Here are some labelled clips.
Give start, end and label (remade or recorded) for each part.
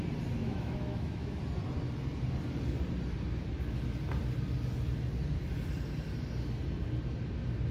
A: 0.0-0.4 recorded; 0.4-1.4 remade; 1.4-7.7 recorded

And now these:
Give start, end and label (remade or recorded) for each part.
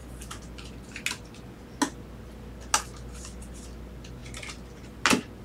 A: 0.0-5.4 recorded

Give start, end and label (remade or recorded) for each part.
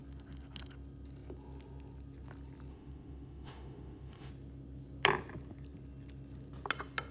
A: 0.0-2.7 recorded; 2.7-4.3 remade; 4.3-7.1 recorded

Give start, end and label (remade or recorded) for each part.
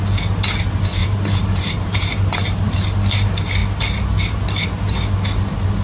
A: 0.0-1.0 recorded; 1.0-2.8 remade; 2.8-5.8 recorded